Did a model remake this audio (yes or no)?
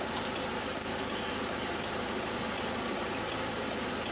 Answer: no